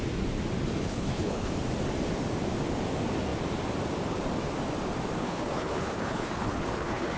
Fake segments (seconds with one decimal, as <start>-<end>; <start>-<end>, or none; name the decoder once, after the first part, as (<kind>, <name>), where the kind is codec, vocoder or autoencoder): 0.8-1.5 (codec, HILCodec); 5.2-7.2